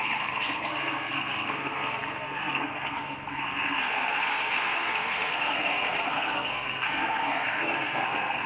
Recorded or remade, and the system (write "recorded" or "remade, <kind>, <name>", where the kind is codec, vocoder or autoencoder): remade, codec, SNAC